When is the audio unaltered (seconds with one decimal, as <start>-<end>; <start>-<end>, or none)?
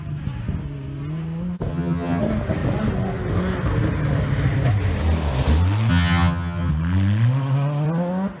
0.0-1.7; 2.2-5.9; 6.7-8.4